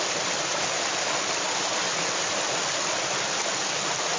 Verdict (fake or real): real